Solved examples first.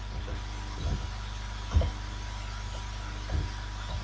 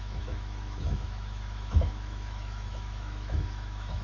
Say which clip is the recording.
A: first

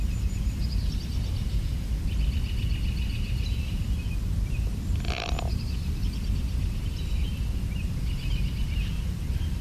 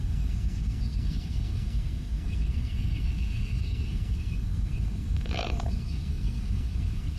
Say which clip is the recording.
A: first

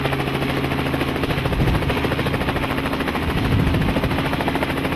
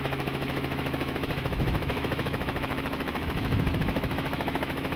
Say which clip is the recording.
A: first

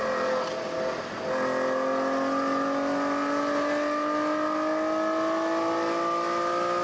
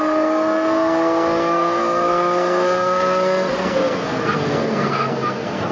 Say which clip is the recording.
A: first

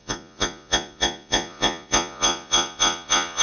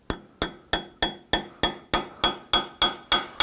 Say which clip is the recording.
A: second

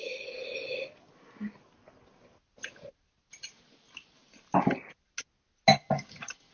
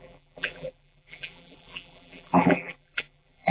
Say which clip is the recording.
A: first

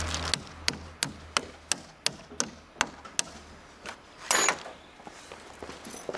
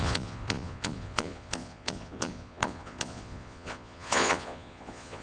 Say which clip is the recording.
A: first